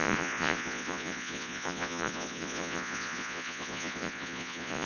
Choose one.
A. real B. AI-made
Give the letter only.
B